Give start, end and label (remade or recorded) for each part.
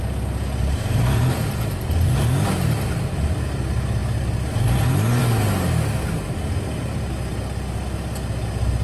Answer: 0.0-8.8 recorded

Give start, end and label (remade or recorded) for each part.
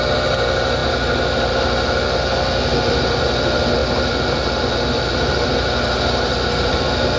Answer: 0.0-7.2 recorded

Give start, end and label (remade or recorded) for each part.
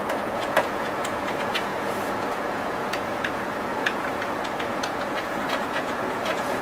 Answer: 0.0-6.6 remade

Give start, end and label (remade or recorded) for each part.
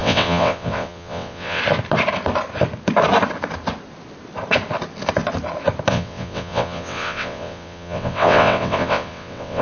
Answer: 0.0-1.6 remade; 1.6-5.9 recorded; 5.9-9.6 remade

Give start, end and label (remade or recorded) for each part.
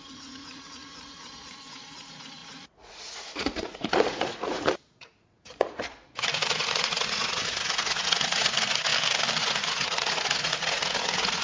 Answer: 0.0-8.9 remade; 8.9-9.4 recorded; 9.4-11.4 remade